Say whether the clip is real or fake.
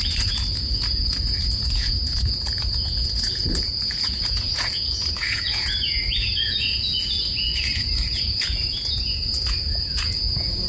fake